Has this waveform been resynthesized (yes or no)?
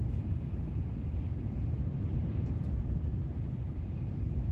yes